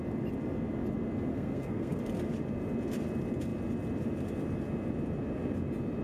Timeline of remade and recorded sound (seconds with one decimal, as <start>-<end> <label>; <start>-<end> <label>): 0.0-1.3 recorded; 1.3-2.0 remade; 2.0-6.0 recorded